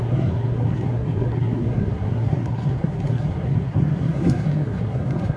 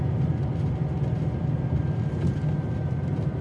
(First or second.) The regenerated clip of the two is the first